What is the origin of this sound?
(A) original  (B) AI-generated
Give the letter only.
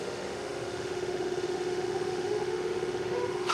B